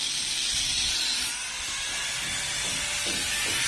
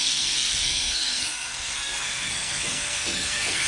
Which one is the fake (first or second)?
second